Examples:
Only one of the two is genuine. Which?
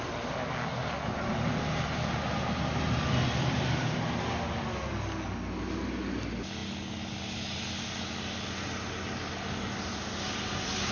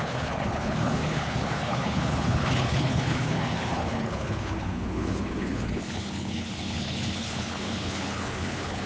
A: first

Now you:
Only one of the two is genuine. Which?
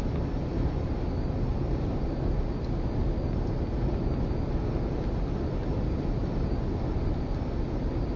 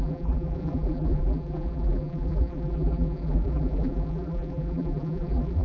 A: first